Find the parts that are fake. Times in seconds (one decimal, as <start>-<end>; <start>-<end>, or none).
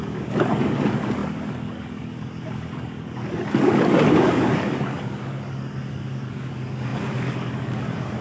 0.0-8.2